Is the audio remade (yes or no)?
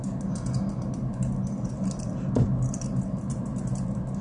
no